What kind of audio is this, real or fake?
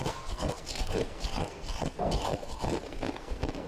fake